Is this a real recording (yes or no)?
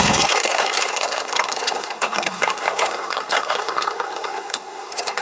no